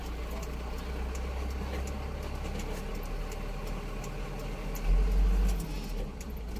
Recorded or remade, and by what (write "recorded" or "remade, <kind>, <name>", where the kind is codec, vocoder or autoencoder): recorded